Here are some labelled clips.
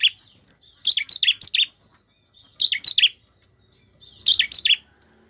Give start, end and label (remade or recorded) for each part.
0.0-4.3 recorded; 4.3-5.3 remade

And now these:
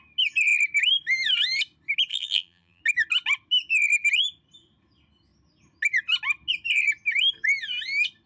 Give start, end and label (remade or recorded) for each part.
0.0-2.1 recorded; 2.1-2.8 remade; 2.8-8.3 recorded